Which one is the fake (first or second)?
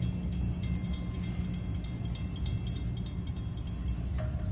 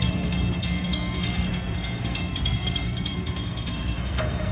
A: second